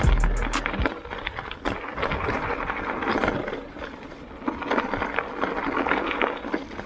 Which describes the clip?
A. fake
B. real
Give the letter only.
B